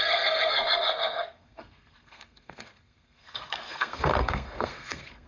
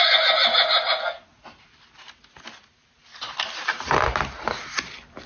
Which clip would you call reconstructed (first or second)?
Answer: first